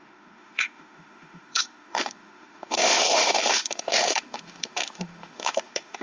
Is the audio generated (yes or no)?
yes